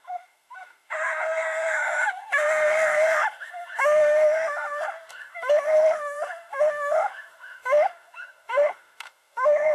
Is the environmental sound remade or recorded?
remade